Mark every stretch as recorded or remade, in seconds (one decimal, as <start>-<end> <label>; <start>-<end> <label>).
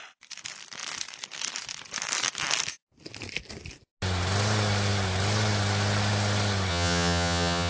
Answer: 0.0-6.7 recorded; 6.7-7.7 remade